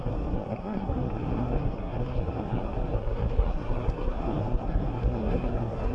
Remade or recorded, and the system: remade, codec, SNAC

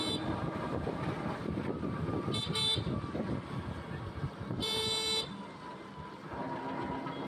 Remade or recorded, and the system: recorded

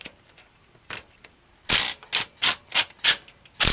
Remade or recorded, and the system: recorded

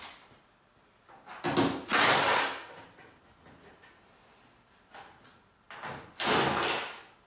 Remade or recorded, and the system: recorded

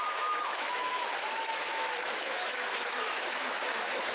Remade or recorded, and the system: remade, autoencoder, DAC-VAE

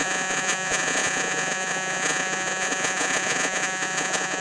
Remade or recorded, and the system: remade, vocoder, Vocos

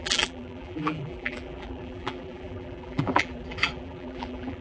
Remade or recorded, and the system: remade, vocoder, BigVGAN v2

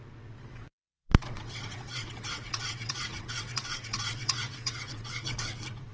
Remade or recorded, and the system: remade, vocoder, WaveNeXt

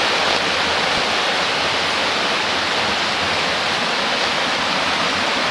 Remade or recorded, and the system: recorded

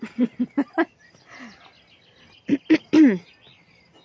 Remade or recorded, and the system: recorded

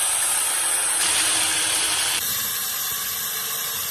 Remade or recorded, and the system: remade, vocoder, BigVGAN v2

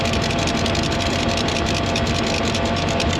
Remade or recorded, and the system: recorded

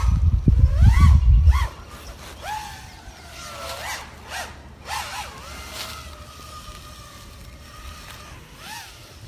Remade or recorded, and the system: recorded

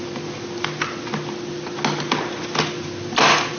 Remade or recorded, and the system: recorded